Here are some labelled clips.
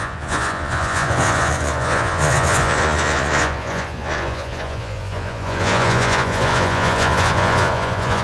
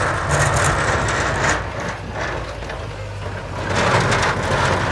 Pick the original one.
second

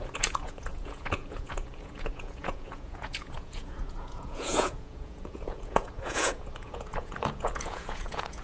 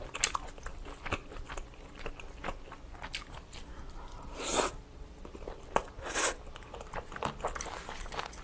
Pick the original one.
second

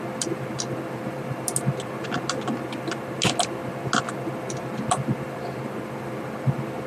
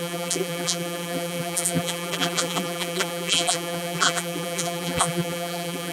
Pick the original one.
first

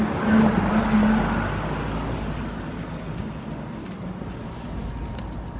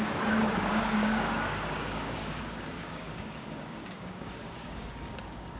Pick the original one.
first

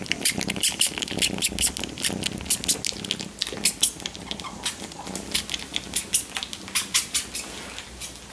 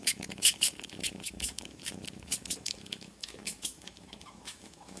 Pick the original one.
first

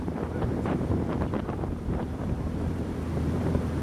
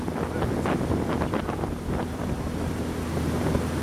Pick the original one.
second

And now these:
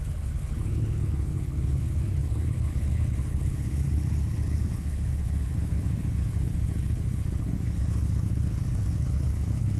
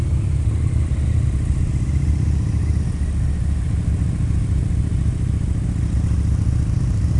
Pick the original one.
second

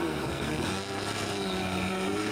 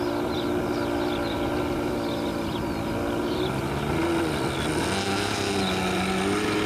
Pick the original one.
second